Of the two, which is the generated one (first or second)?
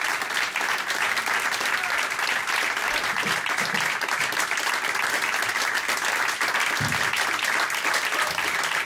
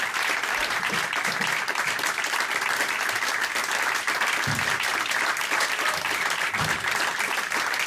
second